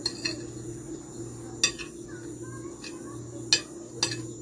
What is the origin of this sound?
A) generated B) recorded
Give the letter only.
B